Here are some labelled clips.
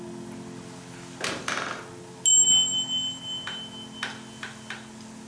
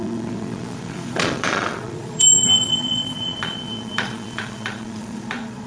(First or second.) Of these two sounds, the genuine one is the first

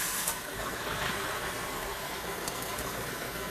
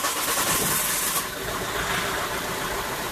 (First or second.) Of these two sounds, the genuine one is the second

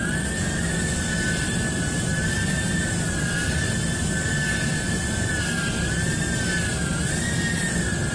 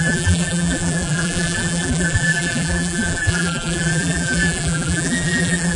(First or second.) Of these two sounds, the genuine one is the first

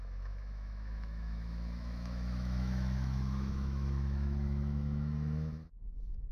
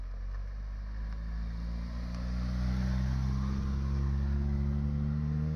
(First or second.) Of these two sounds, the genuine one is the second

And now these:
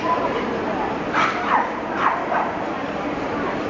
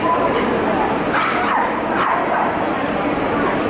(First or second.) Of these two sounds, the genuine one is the second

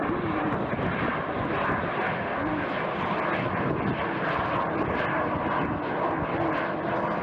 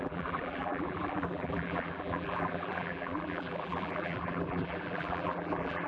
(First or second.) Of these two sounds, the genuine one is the first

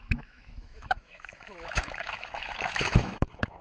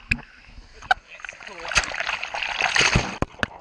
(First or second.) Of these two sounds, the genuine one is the second